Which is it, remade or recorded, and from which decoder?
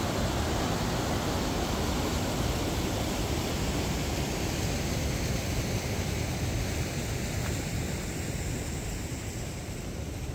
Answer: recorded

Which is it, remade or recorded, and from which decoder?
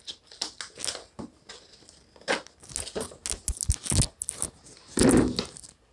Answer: recorded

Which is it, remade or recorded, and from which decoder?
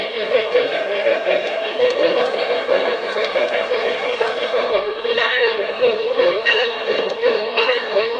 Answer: remade, codec, SNAC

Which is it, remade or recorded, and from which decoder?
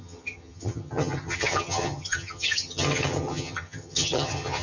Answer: remade, vocoder, HiFi-GAN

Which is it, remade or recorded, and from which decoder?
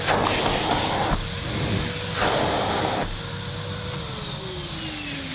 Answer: recorded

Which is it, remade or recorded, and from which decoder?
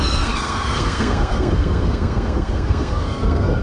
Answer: remade, codec, SNAC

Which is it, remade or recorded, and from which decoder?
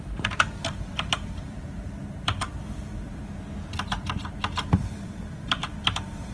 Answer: remade, vocoder, BigVGAN v2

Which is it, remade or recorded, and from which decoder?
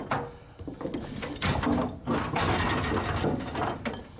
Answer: recorded